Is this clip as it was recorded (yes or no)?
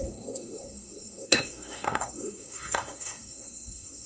no